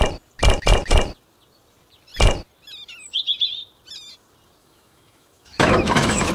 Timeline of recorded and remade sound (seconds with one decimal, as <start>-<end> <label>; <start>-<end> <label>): 0.0-4.6 recorded; 4.6-6.3 remade